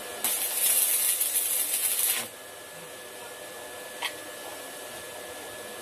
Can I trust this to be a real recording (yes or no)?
yes